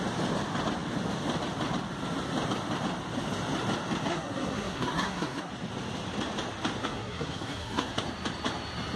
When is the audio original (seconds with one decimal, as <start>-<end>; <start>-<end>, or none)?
0.0-4.1; 5.5-6.8; 8.0-9.0